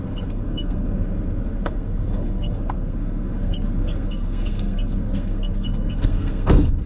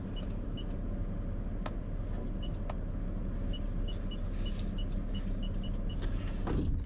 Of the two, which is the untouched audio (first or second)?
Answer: second